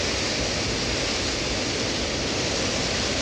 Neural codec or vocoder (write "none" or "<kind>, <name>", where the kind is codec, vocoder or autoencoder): none